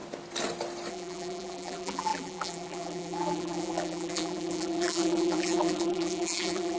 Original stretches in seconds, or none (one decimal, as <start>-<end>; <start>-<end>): 0.0-0.9